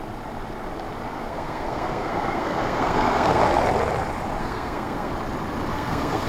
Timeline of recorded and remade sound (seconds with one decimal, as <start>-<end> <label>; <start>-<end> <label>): 0.0-1.1 recorded; 1.1-3.4 remade; 3.4-4.4 recorded; 4.4-5.1 remade; 5.1-5.7 recorded; 5.7-6.3 remade